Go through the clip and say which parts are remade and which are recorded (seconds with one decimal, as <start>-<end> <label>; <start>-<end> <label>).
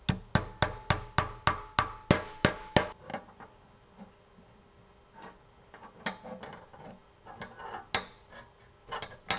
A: 0.0-9.4 recorded